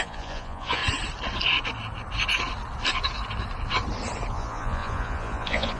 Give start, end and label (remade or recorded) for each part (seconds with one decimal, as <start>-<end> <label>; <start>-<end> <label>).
0.0-0.8 remade; 0.8-4.3 recorded; 4.3-5.8 remade